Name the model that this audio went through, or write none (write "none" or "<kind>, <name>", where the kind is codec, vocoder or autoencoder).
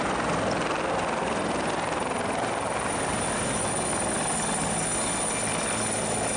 none